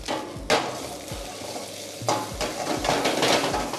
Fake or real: real